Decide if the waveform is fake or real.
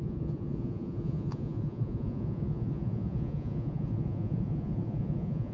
fake